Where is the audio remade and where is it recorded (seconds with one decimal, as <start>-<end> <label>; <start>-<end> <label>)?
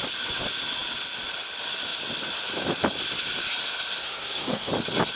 0.0-4.0 recorded; 4.0-4.7 remade; 4.7-5.2 recorded